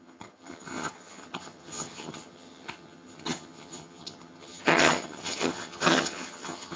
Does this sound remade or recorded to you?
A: remade